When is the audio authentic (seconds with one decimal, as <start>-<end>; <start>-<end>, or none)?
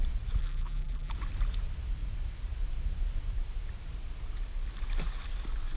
0.0-0.4; 1.1-5.8